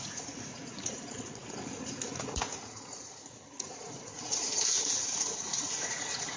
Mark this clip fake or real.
fake